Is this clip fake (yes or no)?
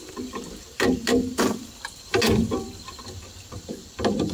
yes